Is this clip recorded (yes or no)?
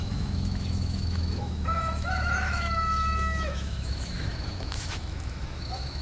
no